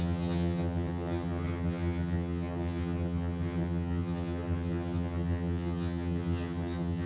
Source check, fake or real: fake